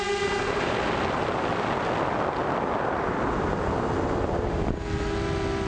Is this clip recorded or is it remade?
recorded